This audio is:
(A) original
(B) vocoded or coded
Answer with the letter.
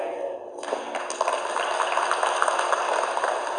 A